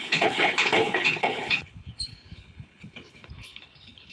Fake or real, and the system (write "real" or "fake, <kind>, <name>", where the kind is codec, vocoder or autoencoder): fake, codec, HILCodec